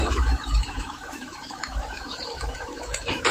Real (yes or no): no